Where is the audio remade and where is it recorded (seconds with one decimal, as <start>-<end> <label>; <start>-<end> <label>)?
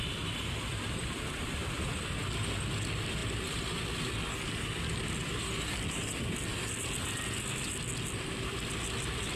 0.0-9.4 recorded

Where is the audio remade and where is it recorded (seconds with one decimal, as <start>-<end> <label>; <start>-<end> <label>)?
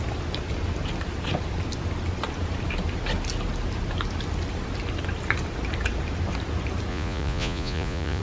0.0-6.9 recorded; 6.9-8.2 remade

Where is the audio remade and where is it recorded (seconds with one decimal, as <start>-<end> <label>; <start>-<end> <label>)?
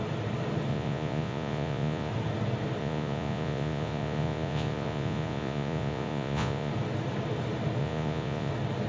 0.0-0.7 recorded; 0.7-2.1 remade; 2.1-2.8 recorded; 2.8-6.7 remade; 6.7-7.8 recorded; 7.8-8.5 remade; 8.5-8.9 recorded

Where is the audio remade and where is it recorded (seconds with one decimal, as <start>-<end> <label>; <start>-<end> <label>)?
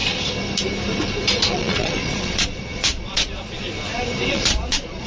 0.0-1.5 recorded; 1.5-3.6 remade; 3.6-4.3 recorded; 4.3-5.1 remade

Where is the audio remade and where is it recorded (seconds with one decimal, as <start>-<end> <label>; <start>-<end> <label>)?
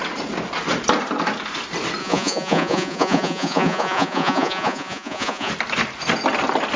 0.0-2.0 recorded; 2.0-5.5 remade; 5.5-6.8 recorded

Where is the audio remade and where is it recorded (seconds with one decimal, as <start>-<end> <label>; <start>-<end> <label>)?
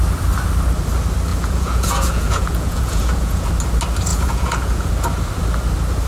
0.0-1.3 recorded; 1.3-3.5 remade; 3.5-4.1 recorded; 4.1-4.9 remade; 4.9-6.1 recorded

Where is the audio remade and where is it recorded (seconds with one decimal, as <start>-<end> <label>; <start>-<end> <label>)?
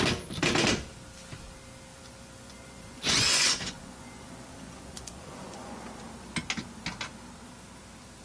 0.0-1.9 recorded; 1.9-5.8 remade; 5.8-8.2 recorded